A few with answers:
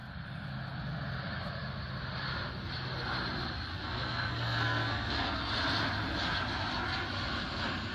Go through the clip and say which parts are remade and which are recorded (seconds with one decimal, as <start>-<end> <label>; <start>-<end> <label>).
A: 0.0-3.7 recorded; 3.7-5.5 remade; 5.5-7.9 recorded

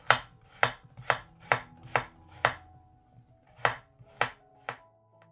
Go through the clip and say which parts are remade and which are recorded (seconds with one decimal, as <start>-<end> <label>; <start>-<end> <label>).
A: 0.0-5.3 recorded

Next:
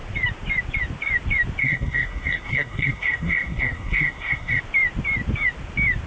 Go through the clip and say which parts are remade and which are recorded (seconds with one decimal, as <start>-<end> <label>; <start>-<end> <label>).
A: 0.0-1.6 recorded; 1.6-4.6 remade; 4.6-6.1 recorded

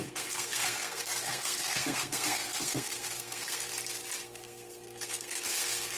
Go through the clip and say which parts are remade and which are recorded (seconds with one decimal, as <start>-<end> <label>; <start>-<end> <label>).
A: 0.0-3.7 remade; 3.7-4.2 recorded; 4.2-6.0 remade